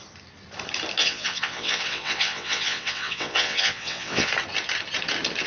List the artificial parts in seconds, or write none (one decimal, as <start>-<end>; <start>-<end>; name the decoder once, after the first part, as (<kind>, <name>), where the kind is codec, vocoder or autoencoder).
1.0-4.3 (vocoder, WaveNeXt)